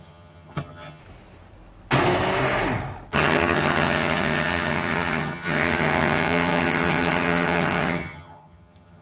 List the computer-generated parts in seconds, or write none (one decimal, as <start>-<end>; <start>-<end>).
0.0-1.0; 3.1-9.0